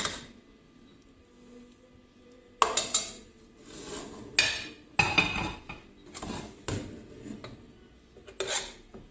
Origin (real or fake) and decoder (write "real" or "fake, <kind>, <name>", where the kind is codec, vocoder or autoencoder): real